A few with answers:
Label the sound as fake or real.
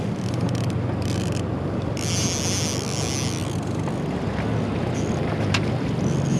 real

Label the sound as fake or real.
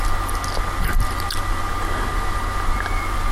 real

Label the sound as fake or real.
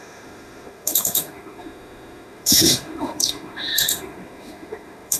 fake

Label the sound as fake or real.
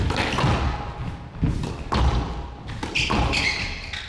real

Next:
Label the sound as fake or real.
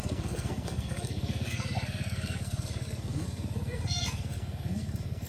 fake